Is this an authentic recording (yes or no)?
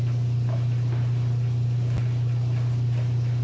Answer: yes